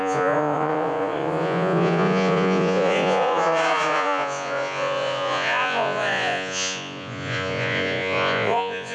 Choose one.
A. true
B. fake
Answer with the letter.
B